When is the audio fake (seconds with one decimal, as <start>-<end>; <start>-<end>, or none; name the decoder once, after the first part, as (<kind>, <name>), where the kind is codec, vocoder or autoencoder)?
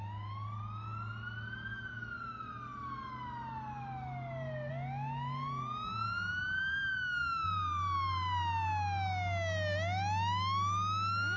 none